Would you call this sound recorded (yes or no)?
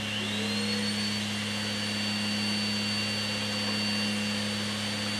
yes